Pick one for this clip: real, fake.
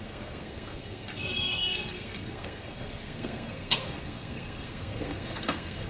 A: fake